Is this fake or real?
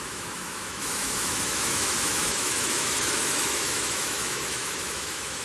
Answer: fake